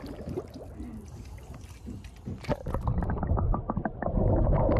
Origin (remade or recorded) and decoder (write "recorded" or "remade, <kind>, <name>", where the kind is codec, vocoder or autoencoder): recorded